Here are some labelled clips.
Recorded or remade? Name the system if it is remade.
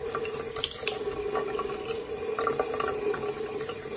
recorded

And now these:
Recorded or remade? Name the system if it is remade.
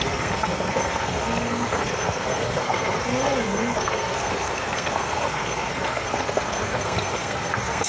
remade, codec, SNAC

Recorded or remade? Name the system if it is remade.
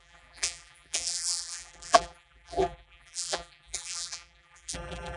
remade, vocoder, BigVGAN v2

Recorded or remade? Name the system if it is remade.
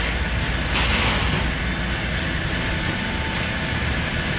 recorded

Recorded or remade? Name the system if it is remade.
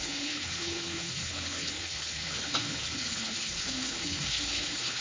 remade, codec, HILCodec